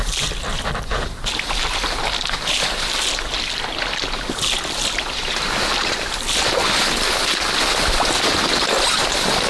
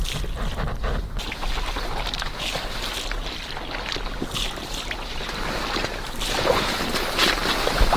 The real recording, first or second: second